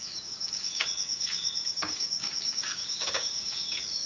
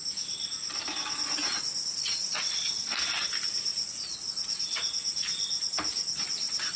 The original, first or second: second